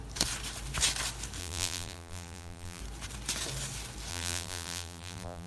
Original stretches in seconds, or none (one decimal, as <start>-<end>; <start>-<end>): 0.0-1.4; 2.8-4.1